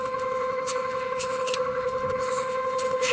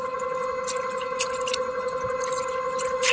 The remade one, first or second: first